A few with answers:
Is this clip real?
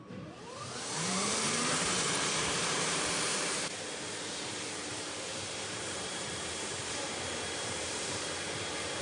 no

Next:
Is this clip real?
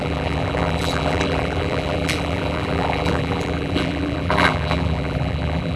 no